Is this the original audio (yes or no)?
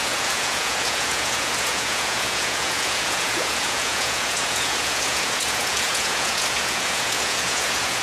no